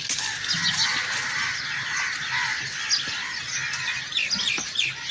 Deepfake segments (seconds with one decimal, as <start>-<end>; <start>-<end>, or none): none